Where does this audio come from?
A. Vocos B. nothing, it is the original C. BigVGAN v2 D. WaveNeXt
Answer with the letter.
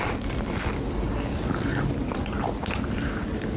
B